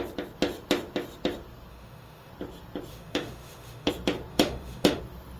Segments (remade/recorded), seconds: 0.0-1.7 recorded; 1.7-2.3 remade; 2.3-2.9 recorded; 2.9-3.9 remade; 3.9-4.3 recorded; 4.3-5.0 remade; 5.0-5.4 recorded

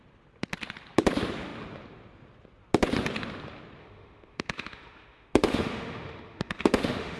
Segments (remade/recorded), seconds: 0.0-3.8 recorded; 3.8-7.2 remade